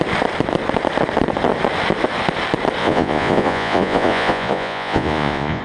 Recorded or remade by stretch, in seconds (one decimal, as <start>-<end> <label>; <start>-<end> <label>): 0.0-2.8 recorded; 2.8-5.6 remade